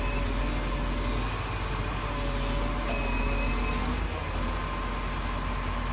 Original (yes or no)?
yes